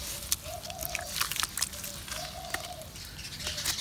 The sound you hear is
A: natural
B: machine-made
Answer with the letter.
A